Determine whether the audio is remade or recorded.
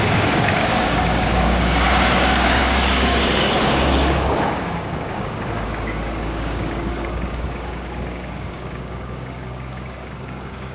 remade